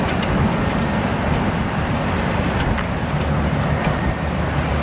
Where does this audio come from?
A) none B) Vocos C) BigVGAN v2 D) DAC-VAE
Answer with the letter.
C